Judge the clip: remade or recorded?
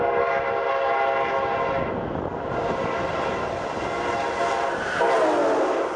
recorded